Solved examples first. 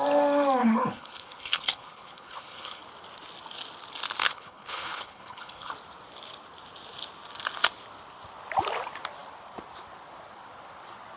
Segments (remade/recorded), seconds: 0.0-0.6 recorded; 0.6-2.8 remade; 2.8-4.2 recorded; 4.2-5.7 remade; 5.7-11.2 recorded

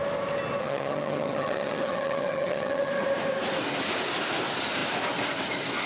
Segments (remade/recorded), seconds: 0.0-0.6 recorded; 0.6-2.9 remade; 2.9-5.9 recorded